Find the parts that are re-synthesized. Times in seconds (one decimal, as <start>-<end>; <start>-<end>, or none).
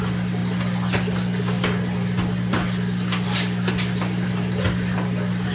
none